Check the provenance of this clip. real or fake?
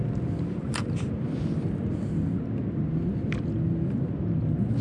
real